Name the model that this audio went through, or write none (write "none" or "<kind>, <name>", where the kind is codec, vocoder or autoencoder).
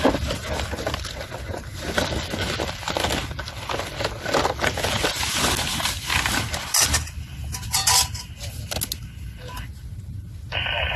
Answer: none